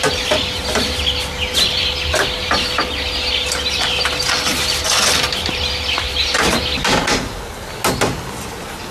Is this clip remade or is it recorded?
recorded